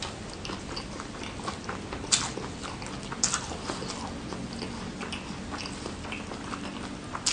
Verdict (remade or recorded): recorded